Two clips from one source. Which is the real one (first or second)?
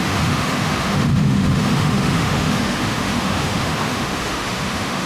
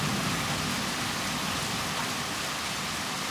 second